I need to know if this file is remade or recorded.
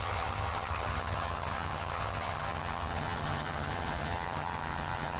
remade